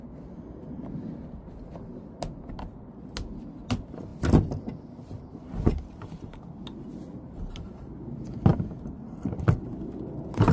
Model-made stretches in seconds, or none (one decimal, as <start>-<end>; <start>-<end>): none